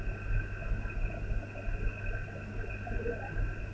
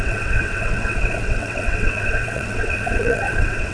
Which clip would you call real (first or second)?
first